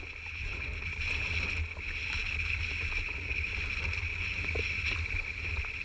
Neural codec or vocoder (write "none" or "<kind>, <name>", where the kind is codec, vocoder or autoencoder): none